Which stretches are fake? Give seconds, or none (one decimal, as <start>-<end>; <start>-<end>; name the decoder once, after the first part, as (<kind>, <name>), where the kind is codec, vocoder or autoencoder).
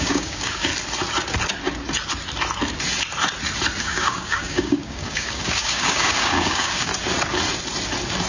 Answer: 0.0-0.7 (codec, DAC); 3.8-6.9